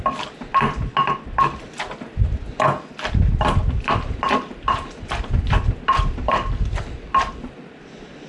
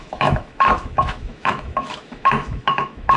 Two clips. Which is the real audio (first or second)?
first